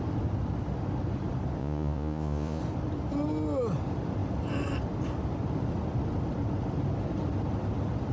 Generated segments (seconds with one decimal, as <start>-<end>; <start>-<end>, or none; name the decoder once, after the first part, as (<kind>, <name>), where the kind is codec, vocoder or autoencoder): 1.6-2.6 (vocoder, Vocos)